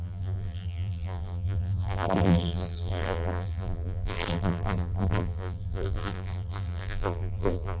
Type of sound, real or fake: fake